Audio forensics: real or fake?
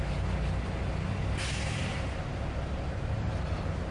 real